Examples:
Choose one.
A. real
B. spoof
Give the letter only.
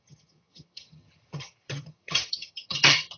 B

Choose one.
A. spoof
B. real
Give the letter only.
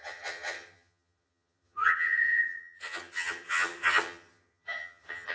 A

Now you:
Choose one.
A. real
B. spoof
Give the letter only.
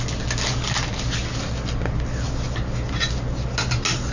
A